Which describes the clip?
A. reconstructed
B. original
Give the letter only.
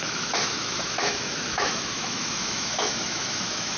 A